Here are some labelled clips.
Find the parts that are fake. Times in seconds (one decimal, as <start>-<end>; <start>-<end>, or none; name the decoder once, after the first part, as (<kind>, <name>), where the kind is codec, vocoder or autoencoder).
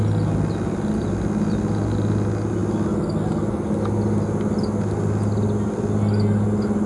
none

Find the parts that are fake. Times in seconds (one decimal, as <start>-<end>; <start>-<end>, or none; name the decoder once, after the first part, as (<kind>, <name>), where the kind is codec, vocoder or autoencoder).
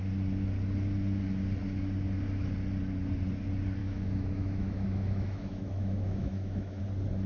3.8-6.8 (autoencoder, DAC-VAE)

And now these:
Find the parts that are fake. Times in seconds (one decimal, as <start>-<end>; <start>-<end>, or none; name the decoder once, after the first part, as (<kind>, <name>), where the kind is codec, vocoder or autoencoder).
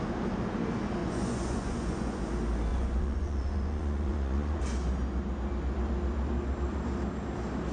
1.0-2.2 (vocoder, Vocos); 2.7-4.6